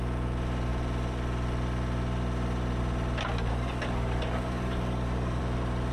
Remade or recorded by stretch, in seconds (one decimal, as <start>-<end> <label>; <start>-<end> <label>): 0.0-3.5 recorded; 3.5-5.4 remade; 5.4-5.9 recorded